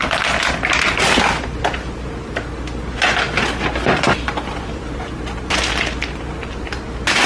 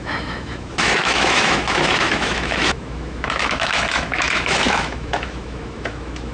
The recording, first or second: first